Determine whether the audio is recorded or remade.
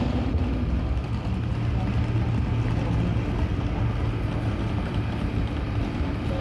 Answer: recorded